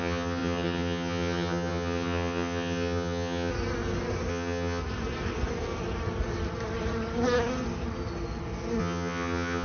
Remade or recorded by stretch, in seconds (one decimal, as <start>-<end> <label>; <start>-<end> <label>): 0.0-3.5 remade; 3.5-4.3 recorded; 4.3-4.8 remade; 4.8-8.8 recorded; 8.8-9.6 remade